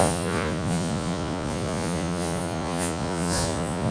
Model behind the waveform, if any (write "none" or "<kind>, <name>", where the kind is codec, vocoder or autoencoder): vocoder, Vocos